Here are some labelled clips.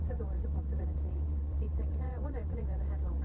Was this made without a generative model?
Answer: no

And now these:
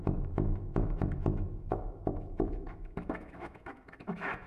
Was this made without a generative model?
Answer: no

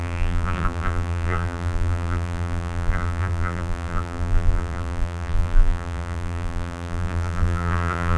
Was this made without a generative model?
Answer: no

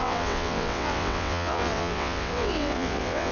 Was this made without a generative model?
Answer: no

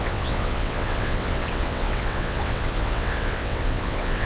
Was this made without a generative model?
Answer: no